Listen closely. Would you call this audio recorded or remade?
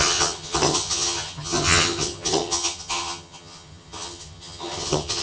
remade